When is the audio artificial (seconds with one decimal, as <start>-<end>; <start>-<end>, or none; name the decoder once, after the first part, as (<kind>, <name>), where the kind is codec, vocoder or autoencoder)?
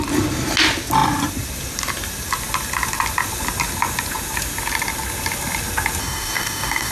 6.0-6.9 (codec, DAC)